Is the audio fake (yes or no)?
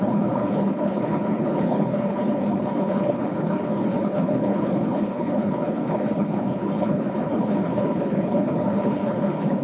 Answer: yes